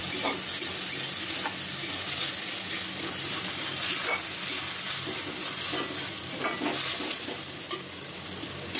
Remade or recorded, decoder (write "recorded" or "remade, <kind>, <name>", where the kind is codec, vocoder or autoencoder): recorded